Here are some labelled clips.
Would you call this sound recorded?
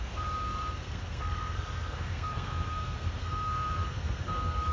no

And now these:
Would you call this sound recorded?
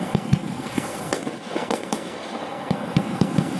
no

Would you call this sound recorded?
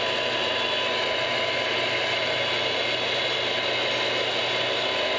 yes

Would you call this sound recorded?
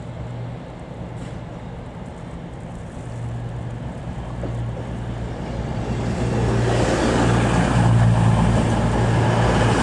yes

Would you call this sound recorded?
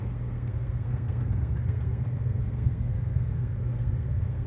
no